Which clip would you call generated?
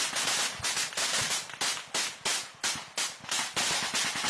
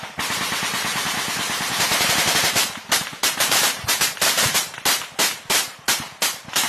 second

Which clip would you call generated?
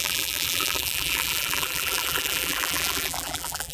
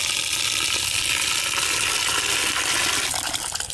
first